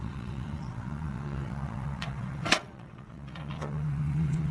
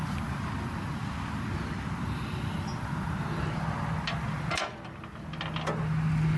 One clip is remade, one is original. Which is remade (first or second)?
first